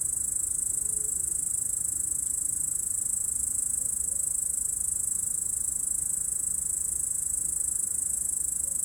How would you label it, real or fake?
real